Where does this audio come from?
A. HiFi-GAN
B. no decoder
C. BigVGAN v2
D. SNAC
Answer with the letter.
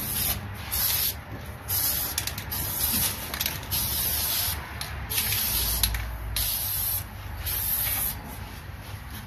B